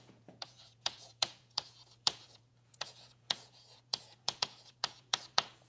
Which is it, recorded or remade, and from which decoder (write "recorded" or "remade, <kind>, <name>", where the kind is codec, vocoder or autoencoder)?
remade, vocoder, Vocos